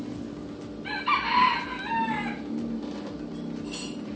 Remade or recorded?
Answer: recorded